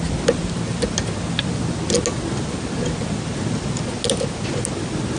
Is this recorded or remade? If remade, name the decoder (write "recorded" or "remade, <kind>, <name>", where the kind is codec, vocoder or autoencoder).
recorded